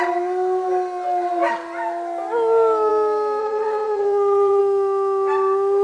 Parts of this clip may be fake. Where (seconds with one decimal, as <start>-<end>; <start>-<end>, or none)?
3.4-4.6